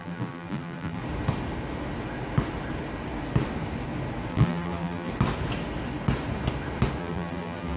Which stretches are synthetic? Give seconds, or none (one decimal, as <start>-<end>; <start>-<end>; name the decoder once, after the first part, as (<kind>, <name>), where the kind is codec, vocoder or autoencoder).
0.0-1.0 (vocoder, BigVGAN v2); 4.3-5.1; 7.0-7.8